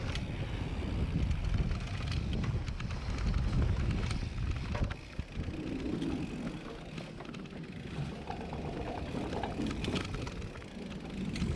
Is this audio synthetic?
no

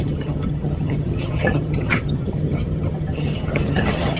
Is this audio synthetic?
yes